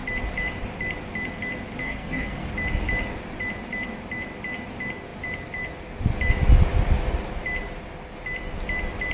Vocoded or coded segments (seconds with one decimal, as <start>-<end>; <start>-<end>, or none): 1.8-2.5